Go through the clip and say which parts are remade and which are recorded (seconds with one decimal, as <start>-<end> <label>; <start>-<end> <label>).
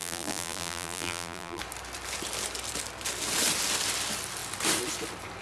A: 0.0-1.6 remade; 1.6-5.4 recorded